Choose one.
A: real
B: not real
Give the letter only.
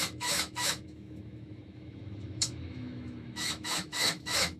B